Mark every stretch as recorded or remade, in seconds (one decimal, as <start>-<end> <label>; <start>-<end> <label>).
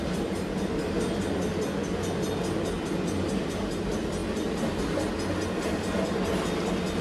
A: 0.0-7.0 recorded